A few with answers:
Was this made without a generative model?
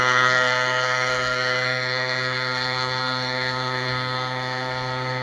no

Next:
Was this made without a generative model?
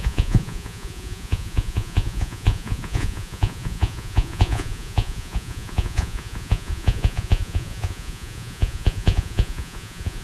no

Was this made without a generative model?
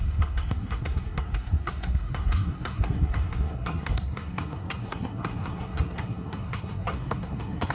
no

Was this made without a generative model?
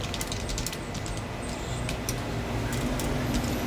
yes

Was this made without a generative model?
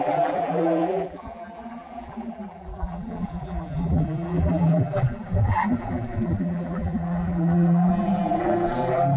no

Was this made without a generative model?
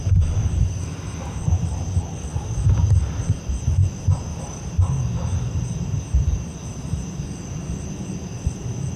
yes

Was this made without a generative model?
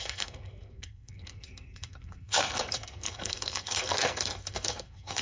no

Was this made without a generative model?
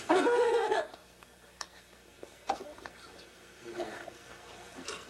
no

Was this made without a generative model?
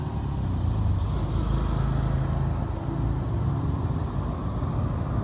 yes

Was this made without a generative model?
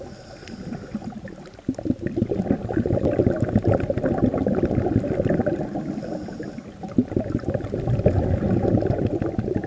yes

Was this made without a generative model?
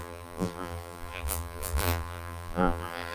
no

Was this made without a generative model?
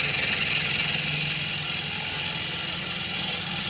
yes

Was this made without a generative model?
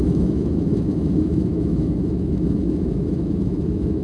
no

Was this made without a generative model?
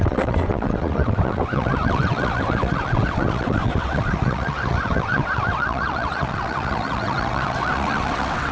no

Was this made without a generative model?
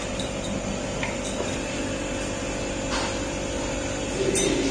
yes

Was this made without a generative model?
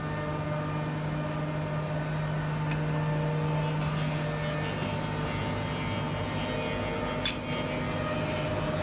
yes